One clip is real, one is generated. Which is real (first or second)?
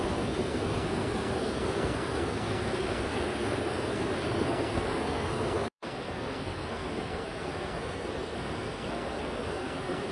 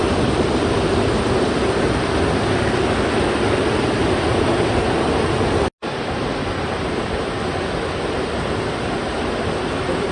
second